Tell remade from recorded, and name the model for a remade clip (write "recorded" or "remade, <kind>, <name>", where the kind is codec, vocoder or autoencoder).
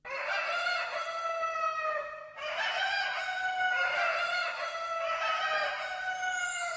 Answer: recorded